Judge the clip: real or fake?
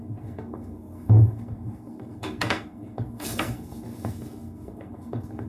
fake